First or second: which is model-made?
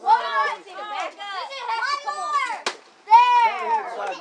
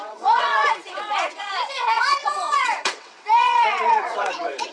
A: second